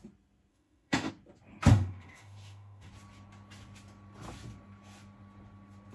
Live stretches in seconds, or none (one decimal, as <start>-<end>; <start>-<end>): 0.0-0.5; 1.1-1.7; 2.9-5.9